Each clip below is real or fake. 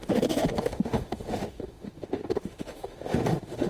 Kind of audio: fake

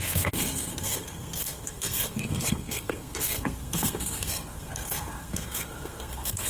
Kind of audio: fake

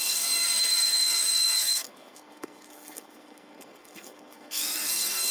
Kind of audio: fake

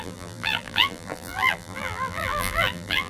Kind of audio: fake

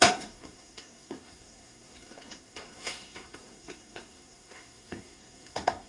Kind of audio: fake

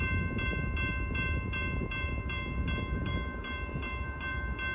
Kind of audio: fake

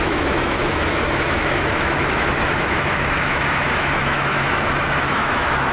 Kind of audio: fake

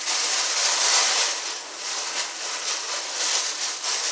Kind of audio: real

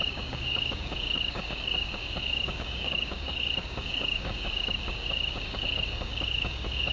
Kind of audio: fake